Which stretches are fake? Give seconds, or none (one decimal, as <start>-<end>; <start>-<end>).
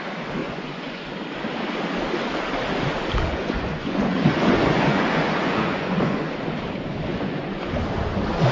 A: 0.4-1.1; 3.2-6.3; 6.9-7.7